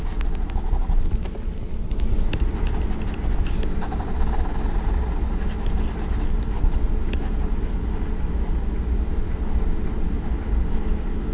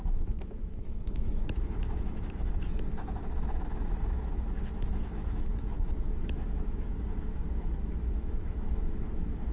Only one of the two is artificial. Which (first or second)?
second